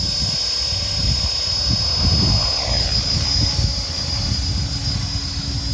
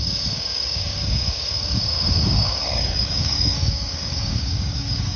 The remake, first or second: second